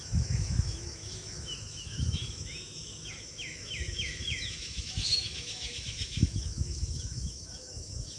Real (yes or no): no